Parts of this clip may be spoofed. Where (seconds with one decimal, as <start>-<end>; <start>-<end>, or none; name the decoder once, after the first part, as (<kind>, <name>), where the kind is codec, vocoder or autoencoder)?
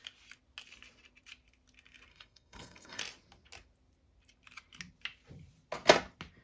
2.1-3.0 (codec, SNAC)